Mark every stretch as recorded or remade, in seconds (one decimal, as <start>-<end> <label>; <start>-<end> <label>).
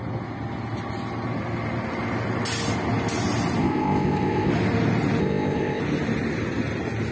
0.0-3.6 recorded; 3.6-4.5 remade; 4.5-5.2 recorded; 5.2-5.8 remade; 5.8-7.1 recorded